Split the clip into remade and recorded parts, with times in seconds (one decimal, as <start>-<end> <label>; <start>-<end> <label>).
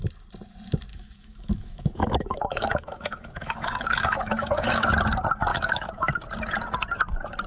0.0-0.9 recorded; 0.9-4.9 remade; 4.9-5.5 recorded; 5.5-6.1 remade; 6.1-7.5 recorded